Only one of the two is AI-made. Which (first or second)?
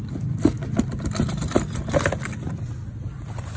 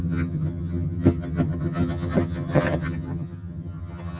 second